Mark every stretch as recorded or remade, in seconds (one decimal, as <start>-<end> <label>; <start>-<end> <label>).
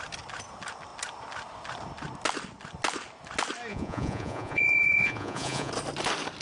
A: 0.0-3.7 recorded; 3.7-5.7 remade; 5.7-6.4 recorded